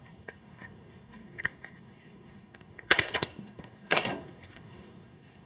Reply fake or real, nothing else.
fake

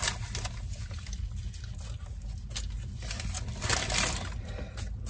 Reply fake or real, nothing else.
real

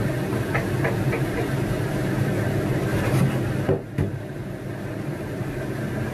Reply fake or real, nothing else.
real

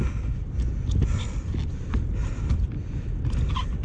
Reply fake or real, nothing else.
real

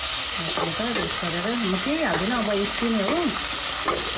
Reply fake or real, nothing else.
real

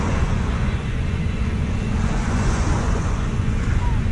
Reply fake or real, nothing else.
fake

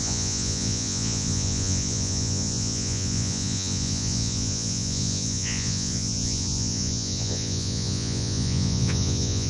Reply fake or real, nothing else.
fake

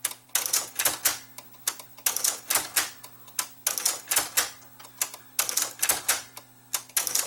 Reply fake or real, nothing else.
real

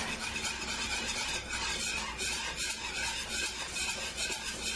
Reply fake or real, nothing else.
real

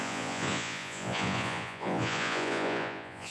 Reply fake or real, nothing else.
fake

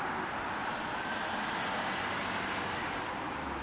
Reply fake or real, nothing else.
real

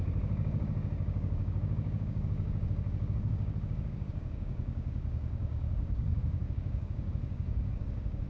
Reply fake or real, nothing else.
fake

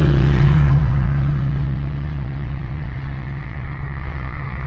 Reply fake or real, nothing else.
fake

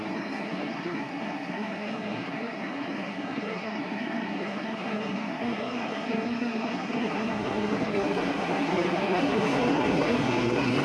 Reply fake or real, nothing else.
fake